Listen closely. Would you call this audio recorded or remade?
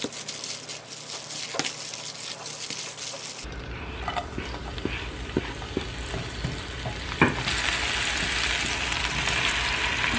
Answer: recorded